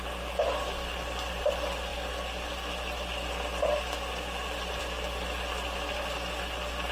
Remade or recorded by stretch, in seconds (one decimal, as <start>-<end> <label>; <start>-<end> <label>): 0.0-6.9 recorded